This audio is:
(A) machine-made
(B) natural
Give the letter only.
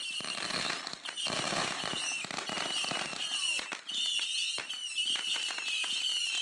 B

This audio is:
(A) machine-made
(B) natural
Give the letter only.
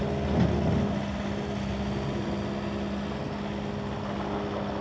B